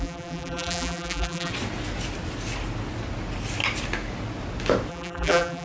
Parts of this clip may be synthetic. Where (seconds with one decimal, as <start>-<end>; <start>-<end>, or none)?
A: 0.0-1.5; 4.9-5.6